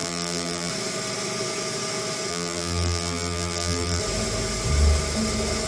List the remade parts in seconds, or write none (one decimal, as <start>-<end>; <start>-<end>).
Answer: 0.0-0.7; 2.3-4.0